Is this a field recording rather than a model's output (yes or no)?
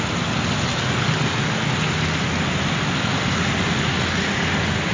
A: yes